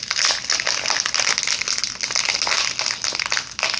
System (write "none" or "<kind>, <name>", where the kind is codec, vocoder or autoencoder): none